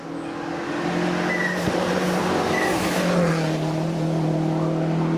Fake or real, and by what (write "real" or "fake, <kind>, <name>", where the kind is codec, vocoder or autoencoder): real